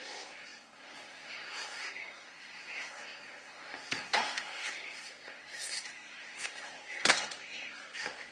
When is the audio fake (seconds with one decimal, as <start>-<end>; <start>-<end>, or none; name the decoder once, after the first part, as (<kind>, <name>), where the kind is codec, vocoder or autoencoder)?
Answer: 0.0-8.3 (codec, SNAC)